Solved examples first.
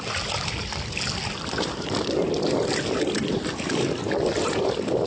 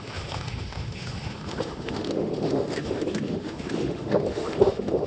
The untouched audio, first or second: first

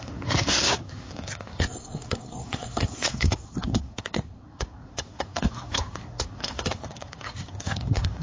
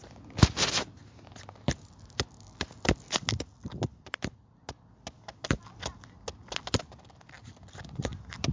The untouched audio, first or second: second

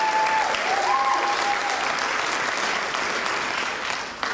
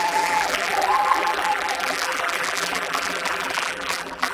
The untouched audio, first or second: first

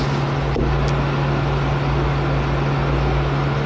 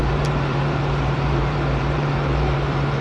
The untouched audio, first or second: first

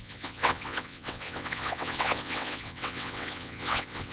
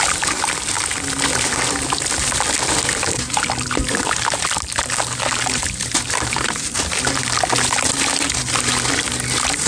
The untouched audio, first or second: second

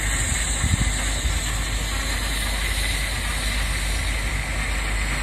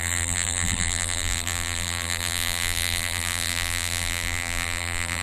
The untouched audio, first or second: first